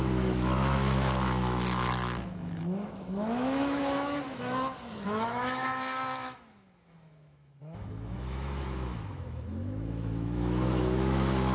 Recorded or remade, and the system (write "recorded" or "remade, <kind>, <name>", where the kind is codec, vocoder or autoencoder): remade, autoencoder, DAC-VAE